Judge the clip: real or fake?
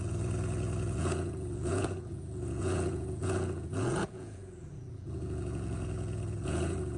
fake